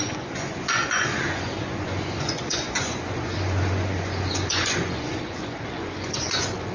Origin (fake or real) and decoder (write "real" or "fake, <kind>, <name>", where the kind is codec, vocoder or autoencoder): fake, vocoder, Vocos